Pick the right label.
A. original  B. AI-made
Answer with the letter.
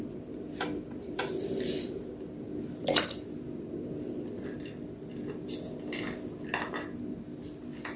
A